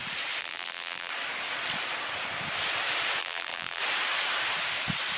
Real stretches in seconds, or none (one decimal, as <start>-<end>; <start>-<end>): 0.0-0.4; 1.1-3.2; 3.8-5.2